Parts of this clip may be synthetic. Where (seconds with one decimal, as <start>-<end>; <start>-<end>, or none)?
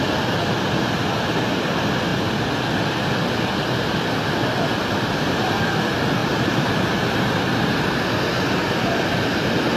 none